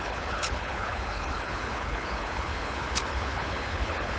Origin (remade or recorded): remade